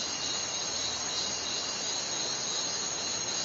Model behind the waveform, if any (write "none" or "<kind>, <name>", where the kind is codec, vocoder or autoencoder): none